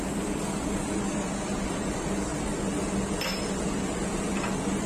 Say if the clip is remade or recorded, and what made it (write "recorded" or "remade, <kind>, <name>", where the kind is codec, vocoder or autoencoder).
recorded